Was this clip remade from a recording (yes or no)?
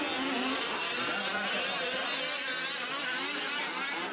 no